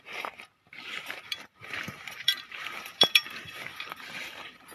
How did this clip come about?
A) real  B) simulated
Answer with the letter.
B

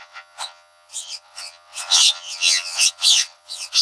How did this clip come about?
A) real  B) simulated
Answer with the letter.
B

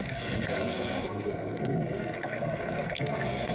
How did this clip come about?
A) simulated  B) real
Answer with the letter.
A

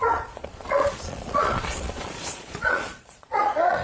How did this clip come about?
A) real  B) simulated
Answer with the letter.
B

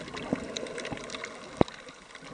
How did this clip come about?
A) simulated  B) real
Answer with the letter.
B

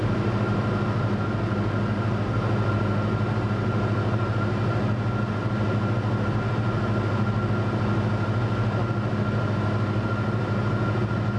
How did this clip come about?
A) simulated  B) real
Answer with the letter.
B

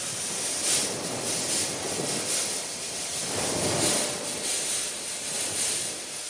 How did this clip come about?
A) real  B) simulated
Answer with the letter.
A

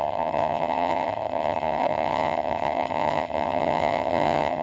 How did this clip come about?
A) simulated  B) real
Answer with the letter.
A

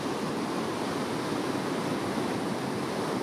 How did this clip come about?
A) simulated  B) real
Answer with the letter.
B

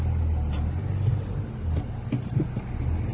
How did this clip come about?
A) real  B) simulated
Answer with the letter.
A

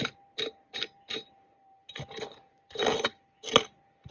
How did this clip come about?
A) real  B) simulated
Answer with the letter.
A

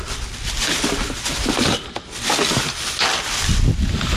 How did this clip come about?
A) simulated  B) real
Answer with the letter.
B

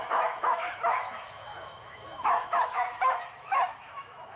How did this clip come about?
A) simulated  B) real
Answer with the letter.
A